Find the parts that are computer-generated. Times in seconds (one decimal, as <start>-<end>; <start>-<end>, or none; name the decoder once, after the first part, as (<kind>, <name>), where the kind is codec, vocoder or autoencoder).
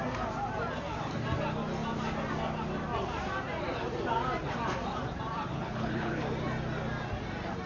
5.5-6.2 (codec, HILCodec)